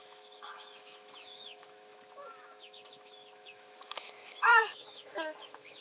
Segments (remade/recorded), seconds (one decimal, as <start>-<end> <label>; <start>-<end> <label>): 0.0-5.8 remade